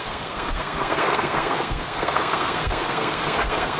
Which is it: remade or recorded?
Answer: remade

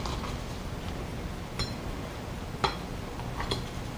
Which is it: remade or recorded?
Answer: recorded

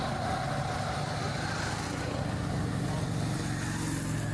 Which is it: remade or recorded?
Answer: recorded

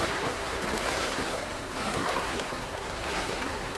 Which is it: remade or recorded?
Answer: remade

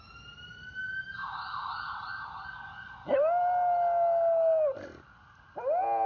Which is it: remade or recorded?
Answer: recorded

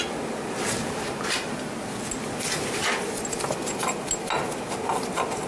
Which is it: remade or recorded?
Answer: recorded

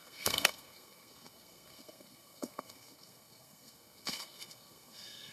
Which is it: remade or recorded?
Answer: remade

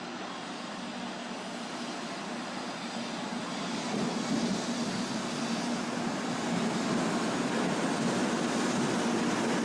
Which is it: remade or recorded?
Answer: recorded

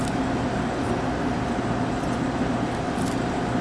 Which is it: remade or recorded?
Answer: recorded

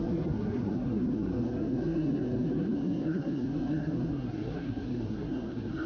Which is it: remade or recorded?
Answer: remade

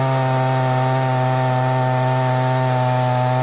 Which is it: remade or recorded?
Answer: recorded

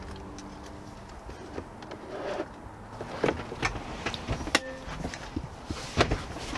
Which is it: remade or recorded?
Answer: recorded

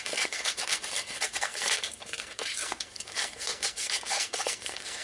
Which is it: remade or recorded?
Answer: remade